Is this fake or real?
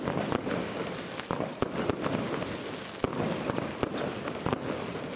real